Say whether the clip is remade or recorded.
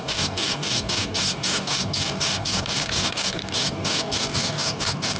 remade